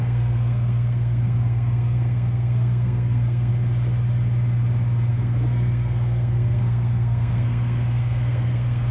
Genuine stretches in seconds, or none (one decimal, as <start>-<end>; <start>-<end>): 3.5-5.1